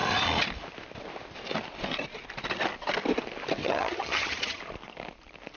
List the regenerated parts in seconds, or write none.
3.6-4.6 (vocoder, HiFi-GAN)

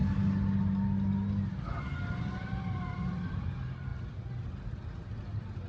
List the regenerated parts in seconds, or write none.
none

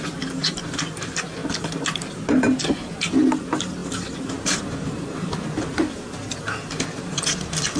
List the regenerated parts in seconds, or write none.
none

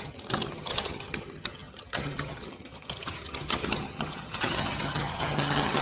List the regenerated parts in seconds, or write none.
0.0-5.8 (vocoder, HiFi-GAN)

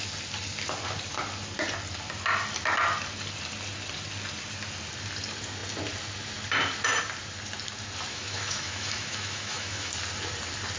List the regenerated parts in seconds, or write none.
8.1-9.9 (autoencoder, DAC-VAE)

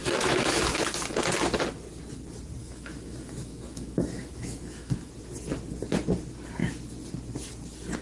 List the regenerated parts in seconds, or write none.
0.0-0.8 (autoencoder, DAC-VAE); 2.6-5.1

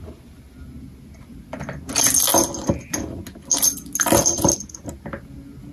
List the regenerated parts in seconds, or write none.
none

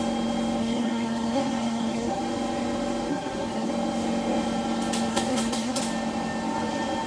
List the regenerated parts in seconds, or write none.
0.6-2.2 (codec, SNAC); 3.1-3.7; 5.1-5.8